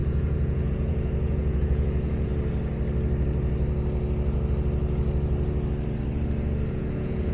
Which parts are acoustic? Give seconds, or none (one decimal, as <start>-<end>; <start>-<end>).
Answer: 2.3-6.7